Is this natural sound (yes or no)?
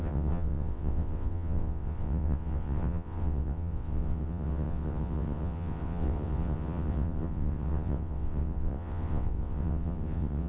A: no